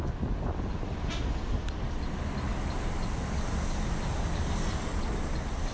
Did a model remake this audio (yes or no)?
no